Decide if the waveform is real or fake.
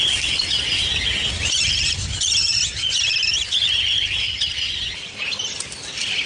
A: fake